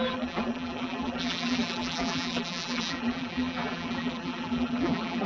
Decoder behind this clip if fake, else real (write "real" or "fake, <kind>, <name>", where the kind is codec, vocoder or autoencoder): fake, vocoder, BigVGAN v2